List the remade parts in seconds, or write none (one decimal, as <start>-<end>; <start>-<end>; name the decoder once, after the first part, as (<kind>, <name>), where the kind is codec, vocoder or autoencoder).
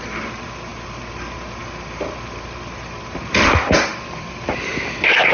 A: none